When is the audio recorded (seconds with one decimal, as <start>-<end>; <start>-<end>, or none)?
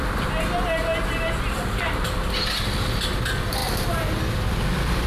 0.0-5.1